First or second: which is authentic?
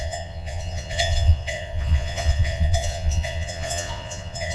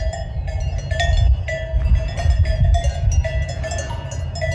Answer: second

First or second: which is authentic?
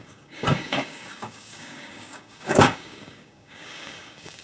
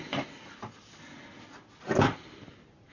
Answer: second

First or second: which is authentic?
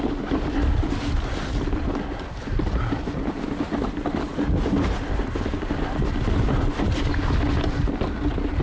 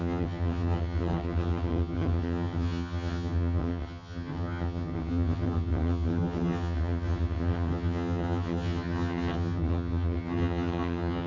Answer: first